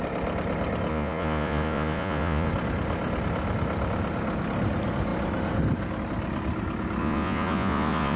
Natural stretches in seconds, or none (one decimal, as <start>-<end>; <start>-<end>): 0.0-0.9; 2.5-7.0